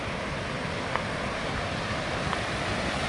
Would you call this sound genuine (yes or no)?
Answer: yes